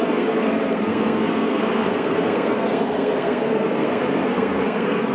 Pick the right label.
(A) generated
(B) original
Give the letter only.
A